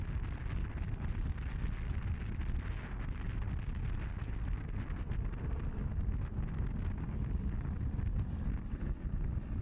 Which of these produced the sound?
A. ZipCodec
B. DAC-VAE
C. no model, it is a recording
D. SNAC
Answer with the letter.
C